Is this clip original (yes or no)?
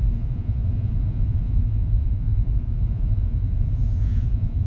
no